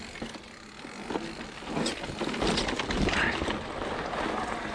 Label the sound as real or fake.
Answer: real